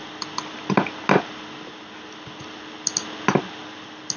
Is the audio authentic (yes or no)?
yes